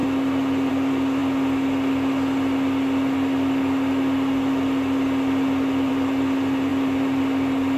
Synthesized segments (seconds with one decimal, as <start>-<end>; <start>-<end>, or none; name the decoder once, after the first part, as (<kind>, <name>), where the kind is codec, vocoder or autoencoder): 0.7-1.2 (vocoder, BigVGAN v2); 5.9-7.8